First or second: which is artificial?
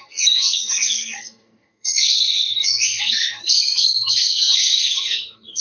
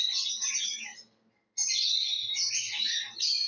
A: first